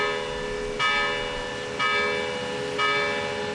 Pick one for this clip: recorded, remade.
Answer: recorded